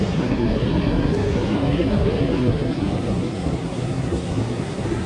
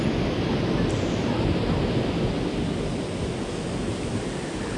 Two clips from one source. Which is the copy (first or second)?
first